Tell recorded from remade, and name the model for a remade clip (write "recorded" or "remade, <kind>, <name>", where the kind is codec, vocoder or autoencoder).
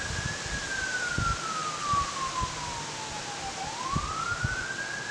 recorded